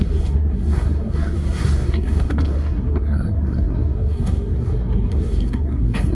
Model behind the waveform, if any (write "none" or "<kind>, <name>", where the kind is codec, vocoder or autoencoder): codec, SNAC